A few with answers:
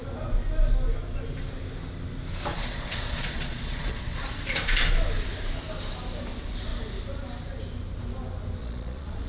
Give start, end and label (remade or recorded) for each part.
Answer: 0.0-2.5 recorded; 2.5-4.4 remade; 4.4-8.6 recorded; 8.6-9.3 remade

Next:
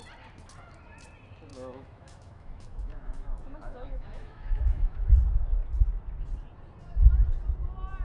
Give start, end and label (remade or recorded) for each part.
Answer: 0.0-1.5 recorded; 1.5-5.1 remade; 5.1-8.0 recorded

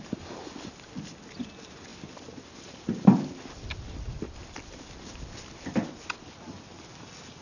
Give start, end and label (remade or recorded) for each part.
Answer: 0.0-7.4 recorded

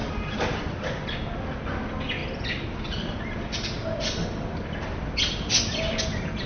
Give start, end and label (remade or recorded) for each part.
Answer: 0.0-6.5 recorded

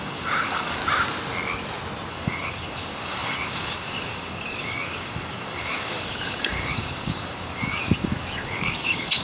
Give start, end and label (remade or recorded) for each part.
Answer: 0.0-0.8 remade; 0.8-2.1 recorded; 2.1-9.2 remade

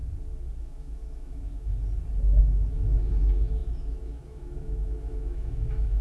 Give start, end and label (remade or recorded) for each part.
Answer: 0.0-0.6 recorded; 0.6-1.7 remade; 1.7-2.4 recorded; 2.4-6.0 remade